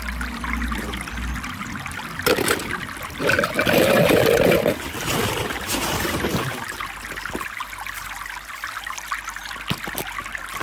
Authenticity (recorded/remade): recorded